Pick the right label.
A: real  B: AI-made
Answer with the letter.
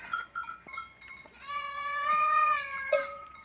B